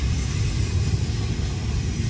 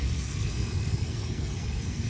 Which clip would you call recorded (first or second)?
first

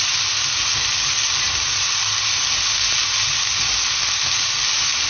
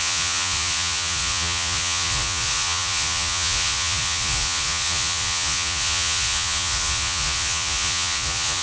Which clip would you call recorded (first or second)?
first